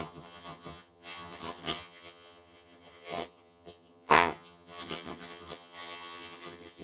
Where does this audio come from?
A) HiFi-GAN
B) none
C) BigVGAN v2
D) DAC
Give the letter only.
A